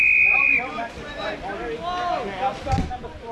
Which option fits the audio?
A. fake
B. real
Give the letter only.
B